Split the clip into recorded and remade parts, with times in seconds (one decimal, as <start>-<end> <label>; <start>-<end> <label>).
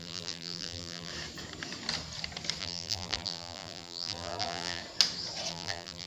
0.0-1.1 remade; 1.1-2.6 recorded; 2.6-4.8 remade; 4.8-5.5 recorded; 5.5-6.1 remade